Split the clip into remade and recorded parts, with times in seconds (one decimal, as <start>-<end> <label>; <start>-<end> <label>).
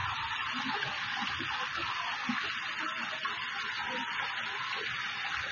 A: 0.0-5.5 recorded